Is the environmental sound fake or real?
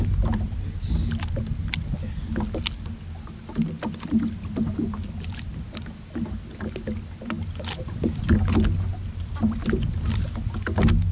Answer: real